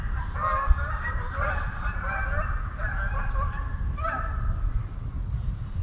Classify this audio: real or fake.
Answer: real